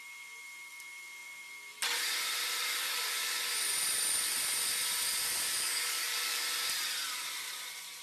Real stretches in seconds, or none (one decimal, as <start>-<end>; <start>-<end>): 0.0-2.7; 3.4-5.5; 6.4-8.0